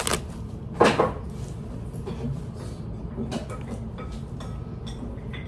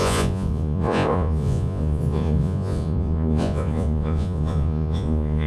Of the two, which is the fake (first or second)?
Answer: second